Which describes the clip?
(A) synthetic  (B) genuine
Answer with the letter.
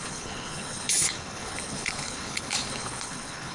A